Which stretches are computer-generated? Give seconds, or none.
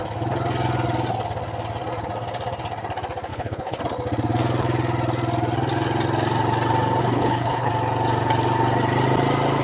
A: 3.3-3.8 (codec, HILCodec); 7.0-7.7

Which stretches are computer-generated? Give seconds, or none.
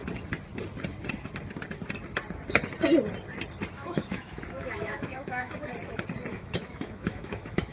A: 3.7-5.7 (autoencoder, DAC-VAE); 6.3-7.7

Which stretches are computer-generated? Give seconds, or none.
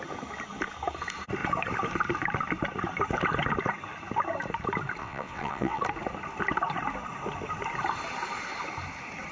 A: 5.0-5.8 (vocoder, WaveNeXt)